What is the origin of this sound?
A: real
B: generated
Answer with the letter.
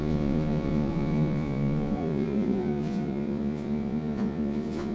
B